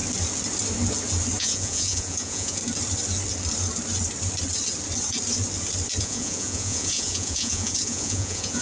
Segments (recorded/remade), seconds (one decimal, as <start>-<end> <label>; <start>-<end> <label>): 0.0-1.4 recorded; 1.4-2.6 remade; 2.6-6.0 recorded; 6.0-8.6 remade